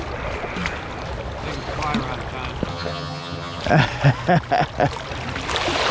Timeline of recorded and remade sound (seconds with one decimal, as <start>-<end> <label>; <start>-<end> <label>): 0.0-2.7 recorded; 2.7-3.6 remade; 3.6-5.9 recorded